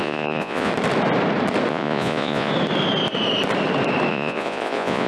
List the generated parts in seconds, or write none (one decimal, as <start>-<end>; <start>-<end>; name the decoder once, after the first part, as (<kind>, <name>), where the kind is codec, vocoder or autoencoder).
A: 0.0-0.7 (vocoder, Vocos); 1.7-2.5; 4.1-5.1

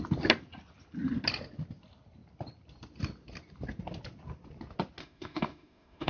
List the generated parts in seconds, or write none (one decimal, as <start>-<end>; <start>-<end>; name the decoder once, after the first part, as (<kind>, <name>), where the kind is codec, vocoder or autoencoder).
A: 5.0-6.1 (autoencoder, DAC-VAE)